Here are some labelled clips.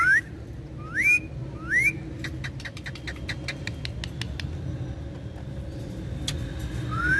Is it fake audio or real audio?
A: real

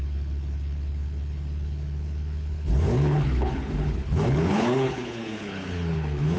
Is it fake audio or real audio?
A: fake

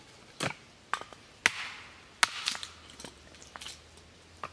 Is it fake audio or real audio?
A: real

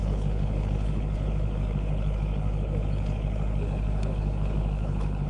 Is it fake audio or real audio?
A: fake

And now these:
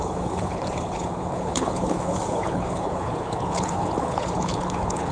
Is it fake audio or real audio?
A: fake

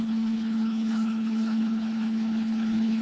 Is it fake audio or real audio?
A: fake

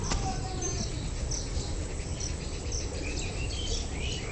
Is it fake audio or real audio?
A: real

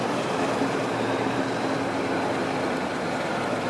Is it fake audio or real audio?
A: real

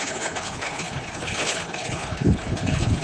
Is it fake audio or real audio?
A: fake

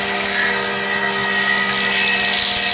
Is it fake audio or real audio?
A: real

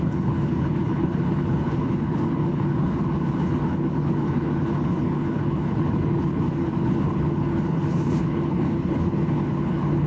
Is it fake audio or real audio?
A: fake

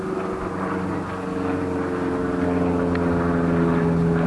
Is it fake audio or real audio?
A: real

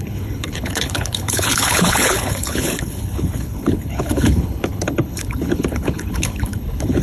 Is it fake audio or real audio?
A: fake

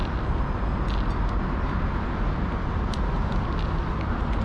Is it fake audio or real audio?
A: real